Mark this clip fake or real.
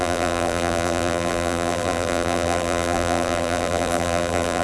fake